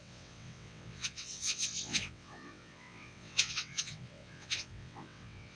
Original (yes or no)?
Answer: no